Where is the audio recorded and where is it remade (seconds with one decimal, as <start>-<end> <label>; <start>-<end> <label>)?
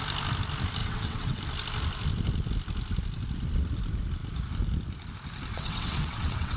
0.0-0.8 recorded; 0.8-1.4 remade; 1.4-5.5 recorded; 5.5-6.6 remade